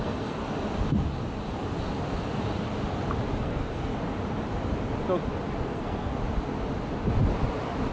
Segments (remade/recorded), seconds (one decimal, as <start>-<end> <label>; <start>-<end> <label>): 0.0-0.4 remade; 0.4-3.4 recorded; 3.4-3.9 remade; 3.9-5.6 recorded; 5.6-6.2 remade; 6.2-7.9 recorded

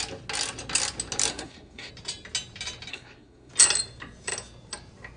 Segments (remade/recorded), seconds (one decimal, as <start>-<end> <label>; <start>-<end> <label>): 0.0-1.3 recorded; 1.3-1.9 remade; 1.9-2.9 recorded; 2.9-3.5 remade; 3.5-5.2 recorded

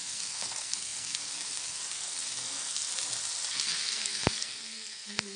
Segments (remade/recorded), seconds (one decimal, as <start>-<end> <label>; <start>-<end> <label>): 0.0-2.9 remade; 2.9-3.5 recorded; 3.5-5.4 remade

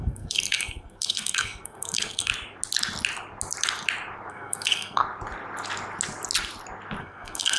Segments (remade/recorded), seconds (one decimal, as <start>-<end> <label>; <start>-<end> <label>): 0.0-2.3 remade; 2.3-4.3 recorded; 4.3-5.0 remade; 5.0-7.0 recorded; 7.0-7.6 remade

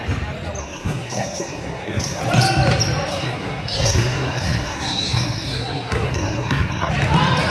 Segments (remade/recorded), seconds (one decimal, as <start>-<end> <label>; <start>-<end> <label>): 0.0-0.6 recorded; 0.6-2.2 remade; 2.2-3.1 recorded; 3.1-6.9 remade; 6.9-7.5 recorded